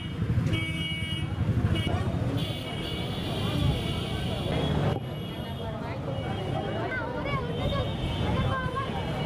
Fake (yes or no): no